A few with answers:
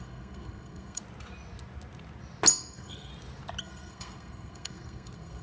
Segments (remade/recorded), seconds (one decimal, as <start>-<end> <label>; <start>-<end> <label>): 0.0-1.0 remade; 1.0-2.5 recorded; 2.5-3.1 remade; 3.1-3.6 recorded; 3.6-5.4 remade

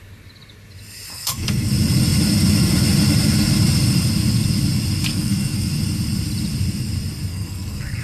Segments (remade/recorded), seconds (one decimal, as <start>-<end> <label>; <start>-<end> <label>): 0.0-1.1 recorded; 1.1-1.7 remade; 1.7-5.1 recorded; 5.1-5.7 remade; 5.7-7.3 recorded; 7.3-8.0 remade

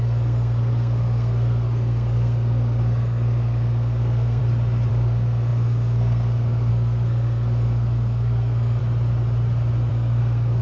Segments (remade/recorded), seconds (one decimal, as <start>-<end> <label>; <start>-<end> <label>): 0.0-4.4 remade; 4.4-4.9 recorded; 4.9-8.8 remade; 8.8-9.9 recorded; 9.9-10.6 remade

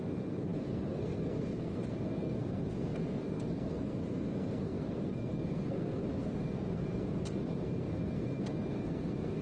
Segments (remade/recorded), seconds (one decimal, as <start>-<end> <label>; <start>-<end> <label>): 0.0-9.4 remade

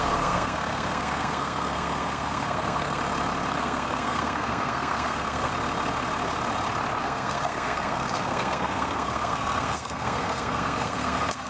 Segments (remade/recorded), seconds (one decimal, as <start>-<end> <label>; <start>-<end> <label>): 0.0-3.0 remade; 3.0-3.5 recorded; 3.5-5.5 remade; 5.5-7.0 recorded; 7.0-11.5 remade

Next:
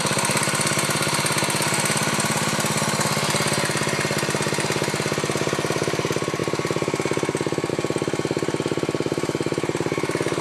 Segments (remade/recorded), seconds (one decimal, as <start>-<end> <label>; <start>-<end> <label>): 0.0-10.4 recorded